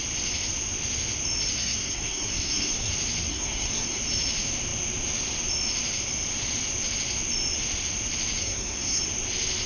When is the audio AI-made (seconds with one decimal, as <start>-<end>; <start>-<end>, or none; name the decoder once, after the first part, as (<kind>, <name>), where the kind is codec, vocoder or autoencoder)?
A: 1.6-2.9 (codec, SNAC); 3.3-4.0; 8.4-9.0